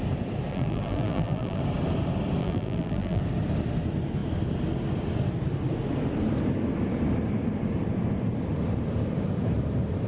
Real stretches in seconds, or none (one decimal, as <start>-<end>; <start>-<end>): 0.0-0.5; 1.6-2.4; 3.2-10.1